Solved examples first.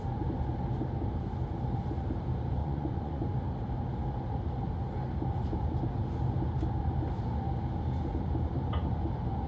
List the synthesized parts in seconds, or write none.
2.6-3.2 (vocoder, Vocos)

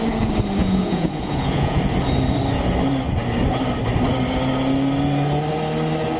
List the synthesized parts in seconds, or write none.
0.6-1.8 (vocoder, Vocos)

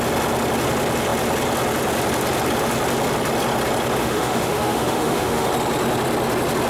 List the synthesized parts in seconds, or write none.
4.0-5.5 (autoencoder, DAC-VAE)

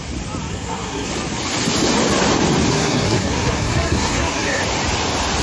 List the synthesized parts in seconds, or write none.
0.5-1.1 (codec, SNAC); 2.7-4.6

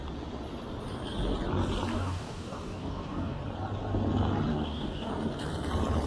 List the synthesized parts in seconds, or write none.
1.9-3.4 (codec, DAC); 4.5-5.1

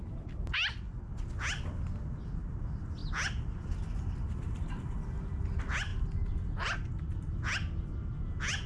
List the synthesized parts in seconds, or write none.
none

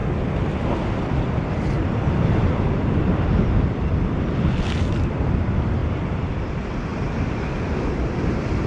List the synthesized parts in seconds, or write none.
none

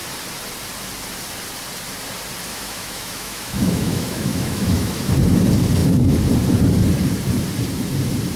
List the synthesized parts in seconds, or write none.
2.5-5.1 (autoencoder, DAC-VAE)